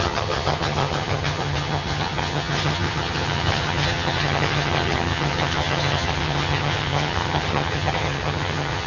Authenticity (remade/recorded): remade